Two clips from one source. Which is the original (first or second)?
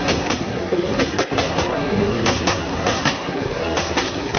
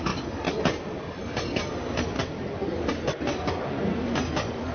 second